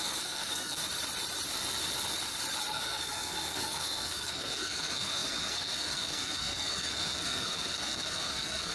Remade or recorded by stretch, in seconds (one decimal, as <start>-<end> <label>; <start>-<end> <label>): 0.0-0.8 remade; 0.8-2.7 recorded; 2.7-8.7 remade